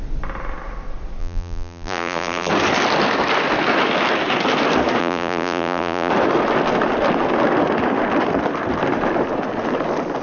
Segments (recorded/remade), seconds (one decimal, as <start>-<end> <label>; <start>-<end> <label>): 0.0-1.2 recorded; 1.2-2.5 remade; 2.5-5.0 recorded; 5.0-6.1 remade; 6.1-10.2 recorded